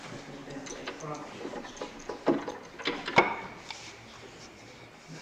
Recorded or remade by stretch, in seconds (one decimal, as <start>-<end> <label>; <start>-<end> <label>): 0.0-5.2 recorded